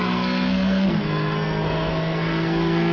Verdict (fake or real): fake